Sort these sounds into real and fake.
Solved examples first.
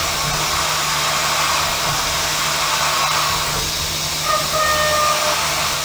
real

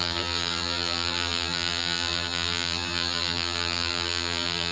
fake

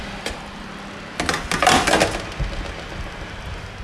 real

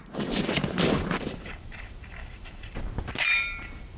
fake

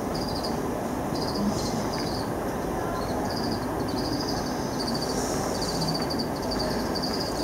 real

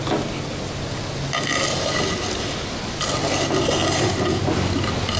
real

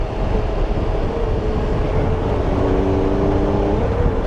real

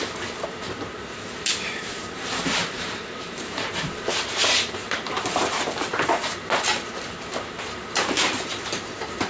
fake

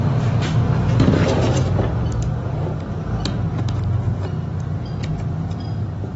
real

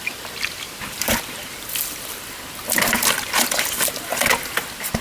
real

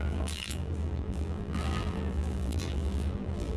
fake